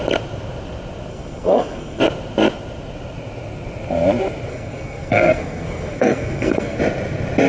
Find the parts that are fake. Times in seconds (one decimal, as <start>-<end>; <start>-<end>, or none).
1.1-2.0; 4.5-6.8